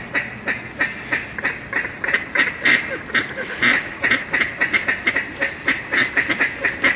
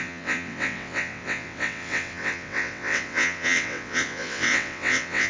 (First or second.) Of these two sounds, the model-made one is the second